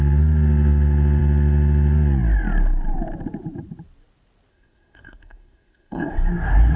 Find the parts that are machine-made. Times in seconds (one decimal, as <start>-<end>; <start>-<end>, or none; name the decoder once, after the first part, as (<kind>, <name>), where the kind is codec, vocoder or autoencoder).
4.5-6.8 (codec, SNAC)